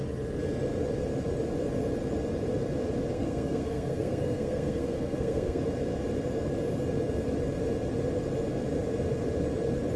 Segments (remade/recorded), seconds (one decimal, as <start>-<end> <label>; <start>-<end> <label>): 0.0-3.1 recorded; 3.1-5.6 remade; 5.6-10.0 recorded